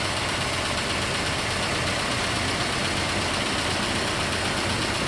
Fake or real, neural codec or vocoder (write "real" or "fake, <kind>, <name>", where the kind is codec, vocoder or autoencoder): real